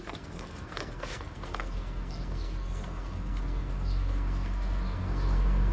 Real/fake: fake